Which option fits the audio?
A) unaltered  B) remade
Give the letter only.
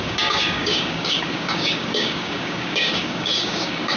B